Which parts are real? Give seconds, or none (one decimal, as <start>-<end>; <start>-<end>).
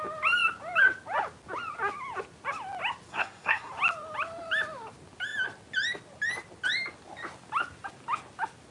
0.0-3.1; 3.7-8.7